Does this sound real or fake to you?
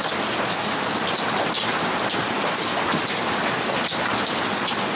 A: real